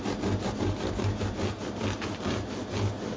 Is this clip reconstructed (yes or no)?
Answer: no